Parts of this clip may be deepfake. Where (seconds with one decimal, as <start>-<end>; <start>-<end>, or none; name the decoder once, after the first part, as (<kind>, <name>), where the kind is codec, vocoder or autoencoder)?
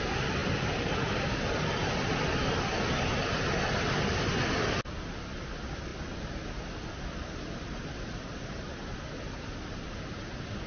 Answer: none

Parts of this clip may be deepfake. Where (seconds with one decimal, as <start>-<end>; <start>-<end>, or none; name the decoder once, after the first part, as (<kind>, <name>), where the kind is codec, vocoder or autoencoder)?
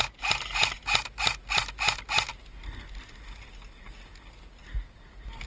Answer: none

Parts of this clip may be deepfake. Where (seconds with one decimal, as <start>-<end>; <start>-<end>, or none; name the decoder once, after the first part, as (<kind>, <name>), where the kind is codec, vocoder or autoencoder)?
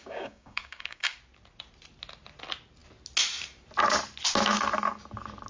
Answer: 0.0-1.2 (codec, DAC)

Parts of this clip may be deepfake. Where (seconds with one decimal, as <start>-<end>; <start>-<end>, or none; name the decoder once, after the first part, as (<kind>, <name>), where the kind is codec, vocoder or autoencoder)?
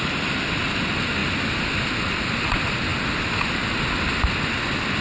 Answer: none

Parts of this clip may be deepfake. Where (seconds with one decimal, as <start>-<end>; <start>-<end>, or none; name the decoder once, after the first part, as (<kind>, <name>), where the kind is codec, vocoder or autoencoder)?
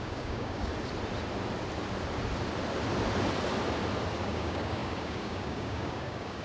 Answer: 0.0-0.7 (codec, DAC); 4.2-6.4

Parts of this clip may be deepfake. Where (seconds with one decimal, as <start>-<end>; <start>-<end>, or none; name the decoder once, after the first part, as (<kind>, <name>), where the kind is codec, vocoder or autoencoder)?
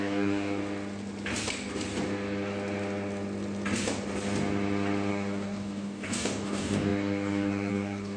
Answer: 0.0-0.6 (codec, DAC); 5.1-8.2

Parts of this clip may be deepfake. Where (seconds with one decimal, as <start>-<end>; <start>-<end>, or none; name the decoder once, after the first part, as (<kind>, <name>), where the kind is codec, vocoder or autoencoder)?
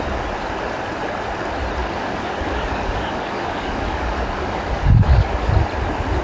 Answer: 1.8-5.5 (codec, DAC)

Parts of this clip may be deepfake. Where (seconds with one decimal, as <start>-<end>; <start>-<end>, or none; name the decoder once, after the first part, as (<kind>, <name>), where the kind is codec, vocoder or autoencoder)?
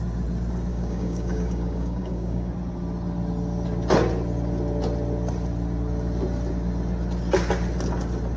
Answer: 0.7-2.5 (codec, DAC)